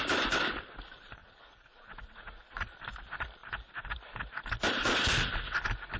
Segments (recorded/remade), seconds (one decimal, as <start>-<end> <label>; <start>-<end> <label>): 0.0-1.2 recorded; 1.2-2.7 remade; 2.7-6.0 recorded